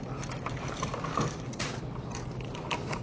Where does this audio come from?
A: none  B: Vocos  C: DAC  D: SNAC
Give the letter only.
A